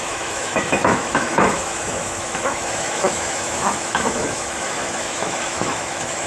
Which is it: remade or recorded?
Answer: remade